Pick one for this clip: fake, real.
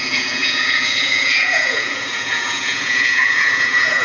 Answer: fake